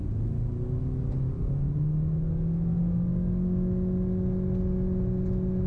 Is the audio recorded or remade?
recorded